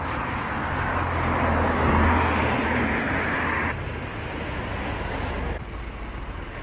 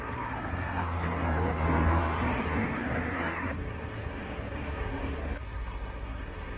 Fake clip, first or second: second